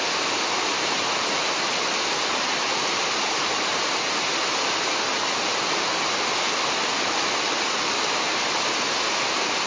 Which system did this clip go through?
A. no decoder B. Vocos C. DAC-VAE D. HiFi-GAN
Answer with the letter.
A